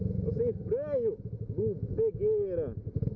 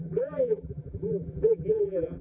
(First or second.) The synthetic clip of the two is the second